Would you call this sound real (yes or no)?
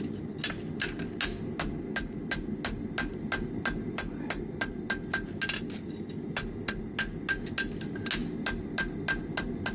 yes